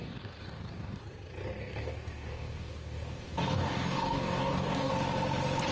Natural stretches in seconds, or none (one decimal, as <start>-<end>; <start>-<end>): 1.0-1.6; 4.9-5.7